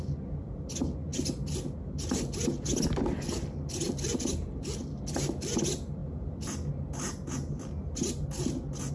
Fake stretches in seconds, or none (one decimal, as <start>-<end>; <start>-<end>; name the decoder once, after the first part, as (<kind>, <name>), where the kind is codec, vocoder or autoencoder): none